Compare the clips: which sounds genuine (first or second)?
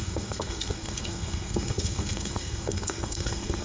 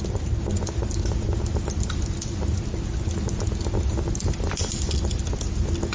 second